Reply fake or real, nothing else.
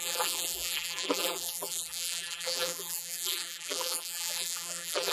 fake